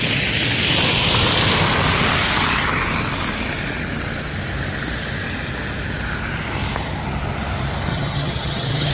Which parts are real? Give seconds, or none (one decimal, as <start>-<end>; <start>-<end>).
0.0-7.9